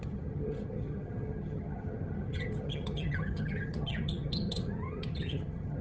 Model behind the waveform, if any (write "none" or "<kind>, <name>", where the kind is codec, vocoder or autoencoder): vocoder, HiFi-GAN